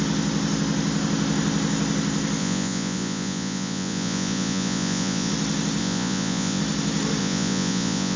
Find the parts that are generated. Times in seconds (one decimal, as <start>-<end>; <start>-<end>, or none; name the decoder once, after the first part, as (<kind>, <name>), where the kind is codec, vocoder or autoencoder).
2.4-5.3 (vocoder, Vocos); 5.8-6.6; 7.2-8.2